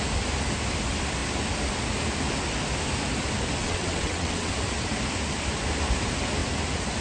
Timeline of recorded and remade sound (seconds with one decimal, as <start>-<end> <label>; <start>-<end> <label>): 0.0-3.6 recorded; 3.6-4.5 remade; 4.5-7.0 recorded